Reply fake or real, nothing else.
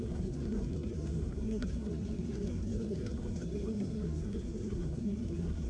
fake